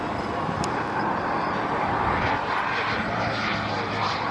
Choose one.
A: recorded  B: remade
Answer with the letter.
A